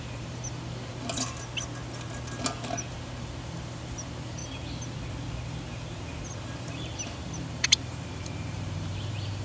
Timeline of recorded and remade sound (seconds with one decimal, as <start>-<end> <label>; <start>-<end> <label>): 0.0-0.9 remade; 0.9-2.9 recorded; 2.9-4.4 remade; 4.4-6.7 recorded; 6.7-9.4 remade